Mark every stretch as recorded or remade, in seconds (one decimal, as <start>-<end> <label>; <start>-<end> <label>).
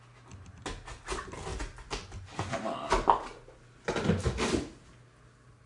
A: 0.0-5.7 recorded